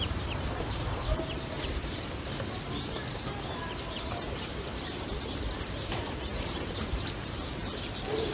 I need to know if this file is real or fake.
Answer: fake